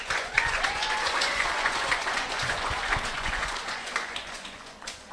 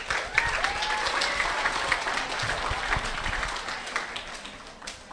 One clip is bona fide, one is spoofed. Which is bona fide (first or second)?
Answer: second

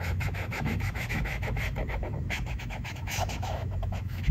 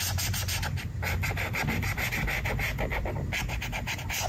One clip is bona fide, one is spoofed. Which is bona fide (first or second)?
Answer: second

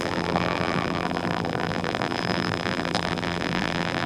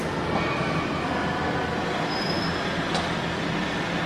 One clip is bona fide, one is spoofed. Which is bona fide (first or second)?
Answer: second